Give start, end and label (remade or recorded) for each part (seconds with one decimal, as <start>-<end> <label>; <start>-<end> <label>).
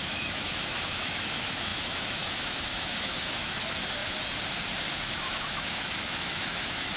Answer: 0.0-4.0 remade; 4.0-5.2 recorded; 5.2-7.0 remade